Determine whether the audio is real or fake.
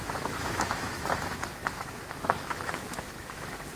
fake